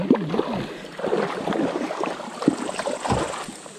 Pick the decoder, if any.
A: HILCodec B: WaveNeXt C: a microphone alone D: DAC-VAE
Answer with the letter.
C